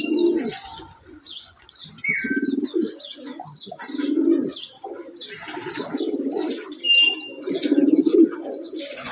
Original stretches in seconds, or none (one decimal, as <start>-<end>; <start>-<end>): 1.8-2.6; 3.3-7.6

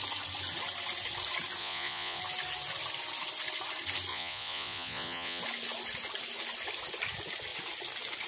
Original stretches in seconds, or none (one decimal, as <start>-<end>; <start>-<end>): 0.0-1.6; 2.2-4.1; 5.4-8.3

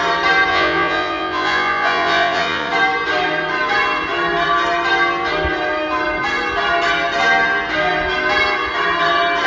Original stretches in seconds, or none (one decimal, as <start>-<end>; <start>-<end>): 0.0-0.5; 2.7-9.5

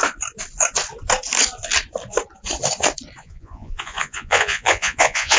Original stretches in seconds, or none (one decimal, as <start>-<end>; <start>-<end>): 0.0-3.2

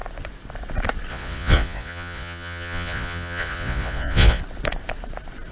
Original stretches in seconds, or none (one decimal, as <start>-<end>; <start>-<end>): 0.0-1.1; 4.4-5.5

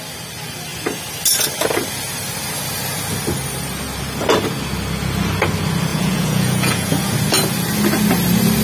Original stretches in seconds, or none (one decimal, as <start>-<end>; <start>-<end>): 0.0-5.9; 7.1-8.6

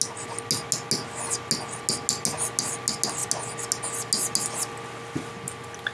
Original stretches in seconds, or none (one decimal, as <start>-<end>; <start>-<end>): 0.0-5.9